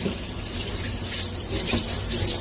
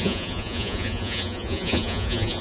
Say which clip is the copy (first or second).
second